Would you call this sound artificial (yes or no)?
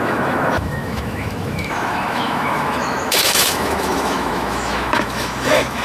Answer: yes